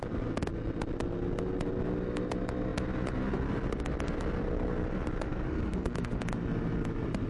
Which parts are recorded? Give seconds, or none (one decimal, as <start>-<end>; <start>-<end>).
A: 0.0-5.3; 6.2-7.3

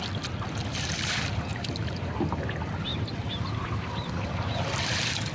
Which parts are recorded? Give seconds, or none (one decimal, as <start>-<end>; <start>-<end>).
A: 0.0-1.5; 2.1-2.9; 4.3-5.3

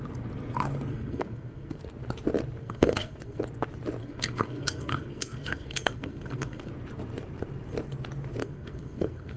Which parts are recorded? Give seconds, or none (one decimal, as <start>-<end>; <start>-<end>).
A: 0.0-0.9; 1.8-2.6; 3.4-4.0; 6.7-8.4

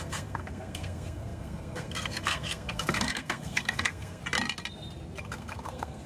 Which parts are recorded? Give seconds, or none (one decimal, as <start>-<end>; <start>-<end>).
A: 4.2-5.2

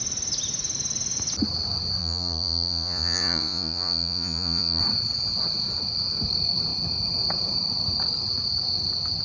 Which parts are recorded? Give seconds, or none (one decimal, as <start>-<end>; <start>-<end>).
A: 0.0-2.0; 4.8-9.2